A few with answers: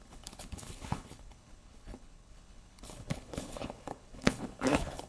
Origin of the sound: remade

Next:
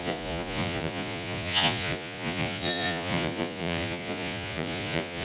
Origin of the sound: remade